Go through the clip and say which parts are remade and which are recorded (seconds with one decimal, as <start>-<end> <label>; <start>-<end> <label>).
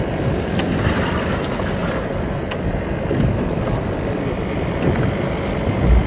0.0-6.1 recorded